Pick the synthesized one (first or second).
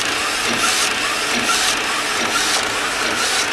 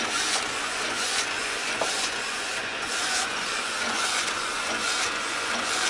second